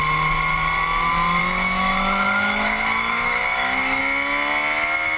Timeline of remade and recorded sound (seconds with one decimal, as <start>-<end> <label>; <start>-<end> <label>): 0.0-1.4 recorded; 1.4-4.0 remade; 4.0-5.2 recorded